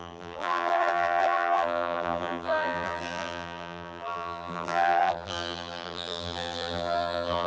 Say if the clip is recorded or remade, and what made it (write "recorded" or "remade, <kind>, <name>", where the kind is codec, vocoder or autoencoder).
remade, vocoder, BigVGAN v2